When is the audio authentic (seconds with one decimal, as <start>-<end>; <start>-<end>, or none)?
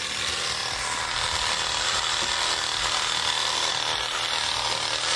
0.0-5.2